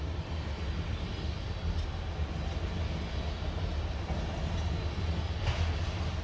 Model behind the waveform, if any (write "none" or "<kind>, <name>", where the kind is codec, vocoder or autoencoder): none